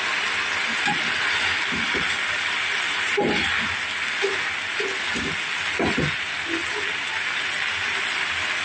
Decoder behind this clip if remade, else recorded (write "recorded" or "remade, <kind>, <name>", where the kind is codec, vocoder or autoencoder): recorded